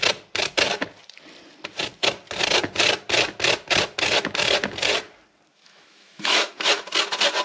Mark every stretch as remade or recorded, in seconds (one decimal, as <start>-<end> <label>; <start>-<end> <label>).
0.0-5.5 recorded; 5.5-6.5 remade; 6.5-7.4 recorded